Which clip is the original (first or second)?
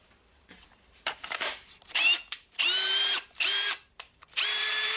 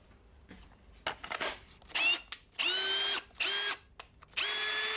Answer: second